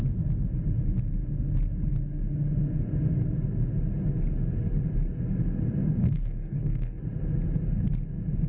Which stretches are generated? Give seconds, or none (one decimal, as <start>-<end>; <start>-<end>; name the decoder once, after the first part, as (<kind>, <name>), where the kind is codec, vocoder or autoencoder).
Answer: 6.0-7.0 (codec, SNAC)